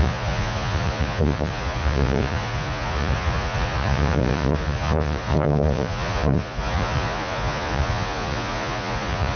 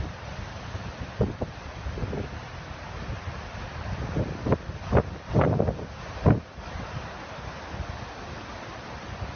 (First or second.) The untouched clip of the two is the second